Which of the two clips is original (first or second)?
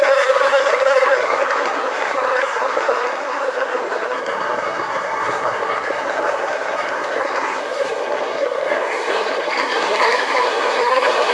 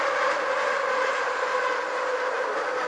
second